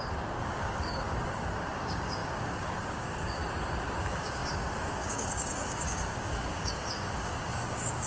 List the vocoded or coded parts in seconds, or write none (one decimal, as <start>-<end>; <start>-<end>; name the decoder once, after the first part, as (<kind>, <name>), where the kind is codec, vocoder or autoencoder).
0.0-3.4 (codec, DAC); 4.0-8.1